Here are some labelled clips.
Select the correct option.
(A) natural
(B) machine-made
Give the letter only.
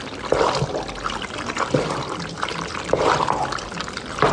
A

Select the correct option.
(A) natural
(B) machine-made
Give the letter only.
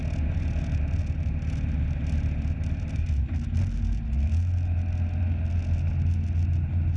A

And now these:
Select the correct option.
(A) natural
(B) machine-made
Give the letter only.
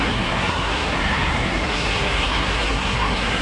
B